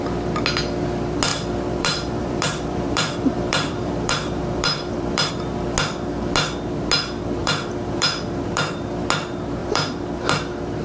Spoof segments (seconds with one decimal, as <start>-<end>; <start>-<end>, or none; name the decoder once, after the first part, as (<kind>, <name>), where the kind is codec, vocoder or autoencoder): 1.3-5.3 (vocoder, BigVGAN v2); 7.4-8.8; 9.6-10.2